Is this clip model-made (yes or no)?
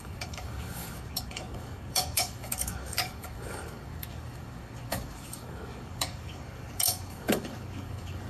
yes